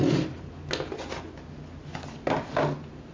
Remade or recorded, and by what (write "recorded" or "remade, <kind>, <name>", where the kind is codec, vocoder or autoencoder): recorded